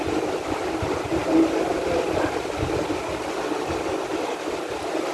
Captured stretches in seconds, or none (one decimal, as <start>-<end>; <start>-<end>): 0.0-5.1

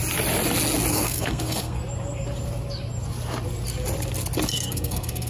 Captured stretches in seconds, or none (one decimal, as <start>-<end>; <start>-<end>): 0.0-0.9; 1.8-4.5

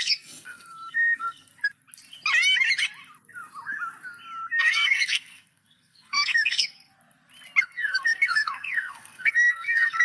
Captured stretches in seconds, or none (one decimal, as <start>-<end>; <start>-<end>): 1.5-4.6; 6.9-7.6

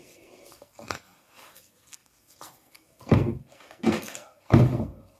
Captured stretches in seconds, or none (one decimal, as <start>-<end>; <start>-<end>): none

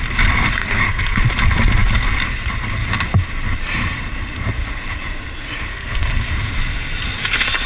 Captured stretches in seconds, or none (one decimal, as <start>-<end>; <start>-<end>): 0.0-0.6; 1.2-5.7; 6.3-7.7